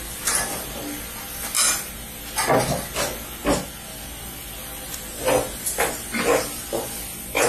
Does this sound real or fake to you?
real